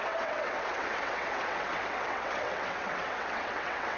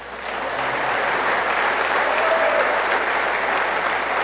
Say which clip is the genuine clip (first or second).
second